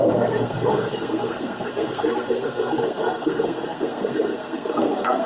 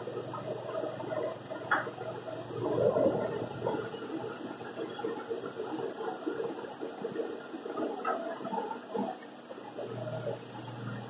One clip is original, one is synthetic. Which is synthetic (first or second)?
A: first